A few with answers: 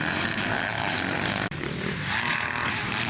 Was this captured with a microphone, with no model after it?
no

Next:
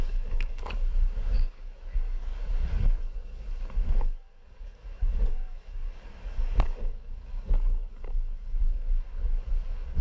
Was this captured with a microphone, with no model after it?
no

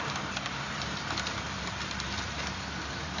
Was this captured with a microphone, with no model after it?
no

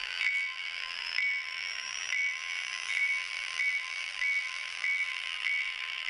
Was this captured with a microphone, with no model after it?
no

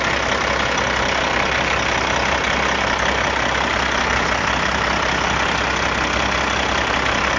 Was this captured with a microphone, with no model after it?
yes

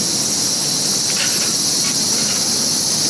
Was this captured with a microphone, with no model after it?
yes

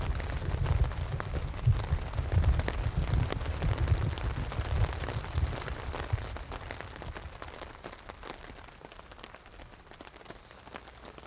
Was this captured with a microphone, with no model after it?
yes